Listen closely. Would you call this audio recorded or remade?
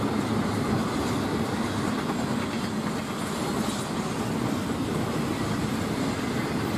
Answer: recorded